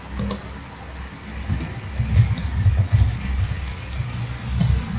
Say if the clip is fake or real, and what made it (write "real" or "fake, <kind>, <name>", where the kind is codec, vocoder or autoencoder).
real